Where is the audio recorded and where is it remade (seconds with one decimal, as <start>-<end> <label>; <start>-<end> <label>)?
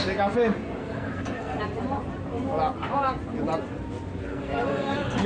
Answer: 0.0-0.8 recorded; 0.8-1.6 remade; 1.6-4.3 recorded; 4.3-5.3 remade